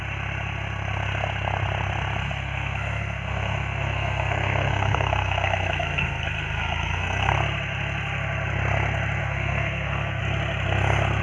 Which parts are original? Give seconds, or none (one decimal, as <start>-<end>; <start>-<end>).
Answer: 0.0-2.2; 7.3-9.2; 10.2-11.2